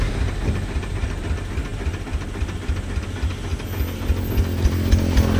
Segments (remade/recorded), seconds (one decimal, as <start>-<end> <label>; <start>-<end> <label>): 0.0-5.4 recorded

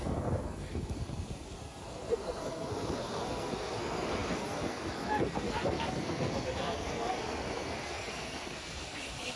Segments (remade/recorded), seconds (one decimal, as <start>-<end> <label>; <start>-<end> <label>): 0.0-9.4 remade

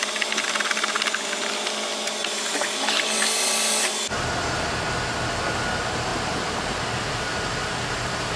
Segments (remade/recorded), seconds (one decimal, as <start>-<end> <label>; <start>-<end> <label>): 0.0-2.2 recorded; 2.2-5.0 remade; 5.0-8.4 recorded